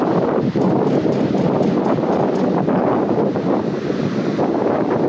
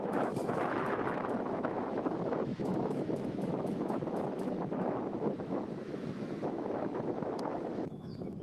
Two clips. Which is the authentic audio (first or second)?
first